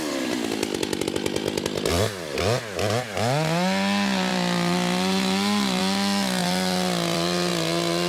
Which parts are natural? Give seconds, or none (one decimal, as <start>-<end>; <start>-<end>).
0.0-4.3; 5.8-6.4; 7.5-8.1